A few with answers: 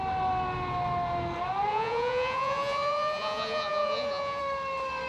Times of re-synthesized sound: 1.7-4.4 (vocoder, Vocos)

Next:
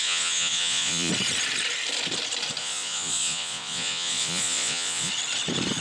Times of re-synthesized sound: 0.0-1.1 (vocoder, Vocos); 2.6-5.1